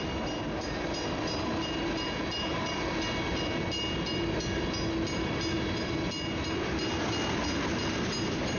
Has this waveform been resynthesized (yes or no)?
no